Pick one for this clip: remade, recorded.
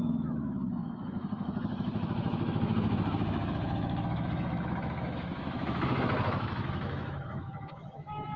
remade